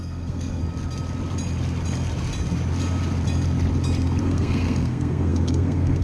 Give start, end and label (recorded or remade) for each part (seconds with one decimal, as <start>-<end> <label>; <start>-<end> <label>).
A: 0.0-0.6 remade; 0.6-4.2 recorded; 4.2-6.0 remade

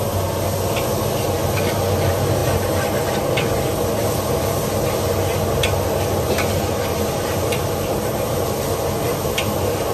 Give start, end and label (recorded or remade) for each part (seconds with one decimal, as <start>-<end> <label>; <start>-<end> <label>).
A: 0.0-9.9 recorded

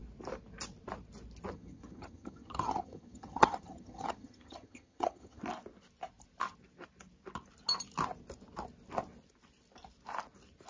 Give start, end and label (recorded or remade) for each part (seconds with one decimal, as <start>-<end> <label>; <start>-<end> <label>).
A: 0.0-1.5 recorded; 1.5-5.4 remade; 5.4-10.7 recorded

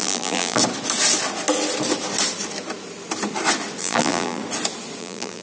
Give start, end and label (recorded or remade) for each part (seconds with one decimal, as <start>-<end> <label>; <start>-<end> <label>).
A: 0.0-0.6 remade; 0.6-3.8 recorded; 3.8-4.4 remade; 4.4-5.0 recorded; 5.0-5.4 remade

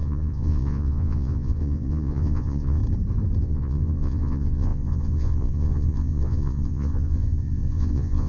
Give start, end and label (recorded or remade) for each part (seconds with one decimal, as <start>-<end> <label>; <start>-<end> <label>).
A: 0.0-2.8 remade; 2.8-3.4 recorded; 3.4-8.3 remade

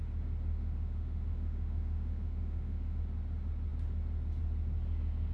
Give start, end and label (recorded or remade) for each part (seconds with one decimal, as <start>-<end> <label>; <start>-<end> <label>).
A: 0.0-0.5 recorded; 0.5-3.0 remade; 3.0-5.3 recorded